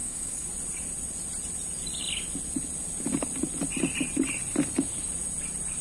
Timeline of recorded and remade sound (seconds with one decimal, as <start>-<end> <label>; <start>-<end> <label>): 0.0-0.5 remade; 0.5-5.8 recorded